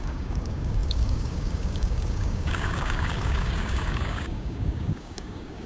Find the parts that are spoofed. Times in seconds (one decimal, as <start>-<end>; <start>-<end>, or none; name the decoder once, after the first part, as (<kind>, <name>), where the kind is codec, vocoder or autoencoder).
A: 0.0-5.7 (codec, DAC)